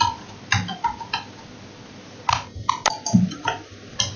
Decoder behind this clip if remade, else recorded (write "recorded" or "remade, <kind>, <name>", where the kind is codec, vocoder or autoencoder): recorded